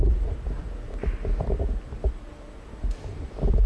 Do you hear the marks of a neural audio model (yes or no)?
no